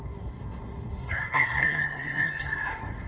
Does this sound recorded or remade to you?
remade